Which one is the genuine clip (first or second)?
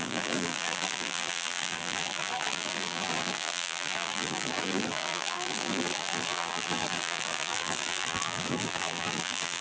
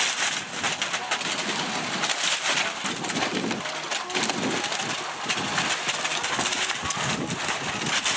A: second